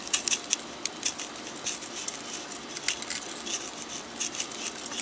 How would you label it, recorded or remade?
recorded